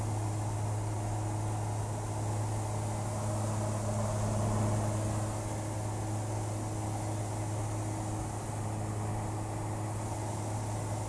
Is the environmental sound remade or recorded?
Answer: recorded